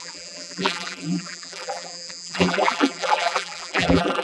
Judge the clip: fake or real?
fake